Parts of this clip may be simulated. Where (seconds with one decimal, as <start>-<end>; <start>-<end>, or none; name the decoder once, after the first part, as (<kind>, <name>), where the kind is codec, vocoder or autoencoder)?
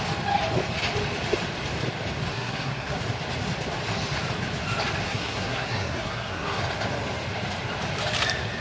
2.3-3.0 (codec, SNAC); 5.0-6.6